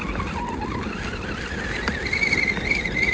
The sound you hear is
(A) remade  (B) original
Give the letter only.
B